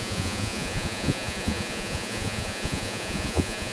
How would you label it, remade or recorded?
remade